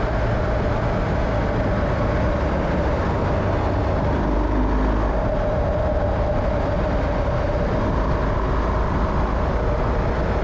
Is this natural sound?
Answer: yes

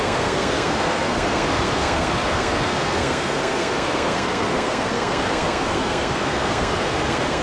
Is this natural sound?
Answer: no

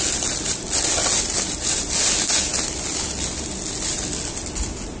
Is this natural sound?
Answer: yes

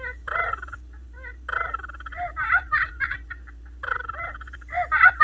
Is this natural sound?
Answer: yes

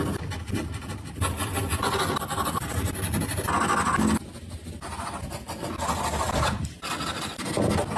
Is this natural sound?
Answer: yes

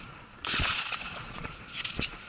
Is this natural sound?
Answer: no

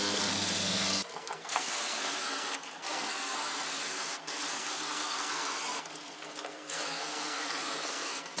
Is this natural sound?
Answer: no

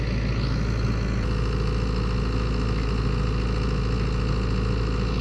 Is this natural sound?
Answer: yes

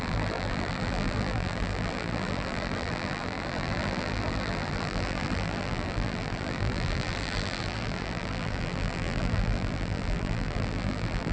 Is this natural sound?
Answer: no